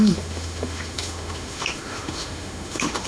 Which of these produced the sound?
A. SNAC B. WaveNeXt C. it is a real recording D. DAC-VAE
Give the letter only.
D